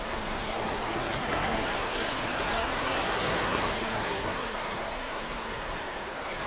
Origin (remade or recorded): remade